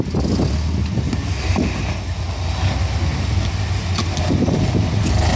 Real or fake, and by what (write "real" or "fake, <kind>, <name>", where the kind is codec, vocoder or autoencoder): real